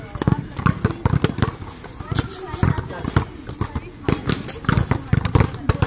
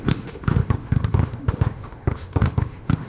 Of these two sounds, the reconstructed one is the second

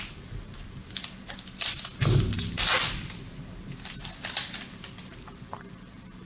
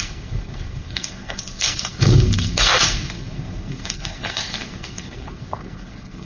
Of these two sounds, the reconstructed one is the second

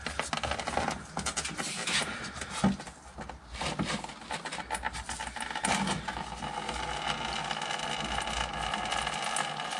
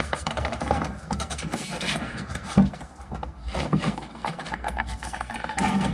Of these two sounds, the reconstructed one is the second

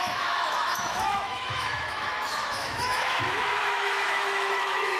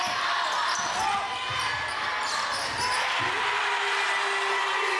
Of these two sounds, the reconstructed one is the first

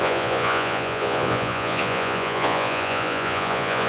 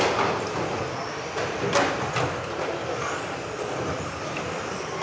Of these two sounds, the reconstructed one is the first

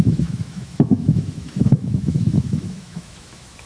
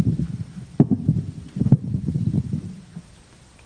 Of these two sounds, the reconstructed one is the first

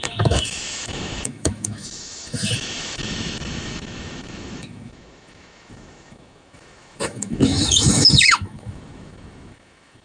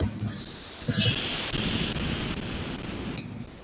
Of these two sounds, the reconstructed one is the first